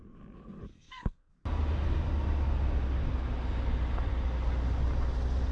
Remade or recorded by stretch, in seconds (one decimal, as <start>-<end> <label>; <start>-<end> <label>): 0.0-0.7 recorded; 0.7-1.3 remade; 1.3-5.5 recorded